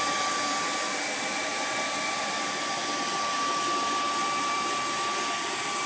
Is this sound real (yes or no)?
yes